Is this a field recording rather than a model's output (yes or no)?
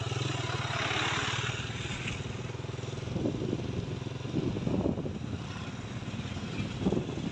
yes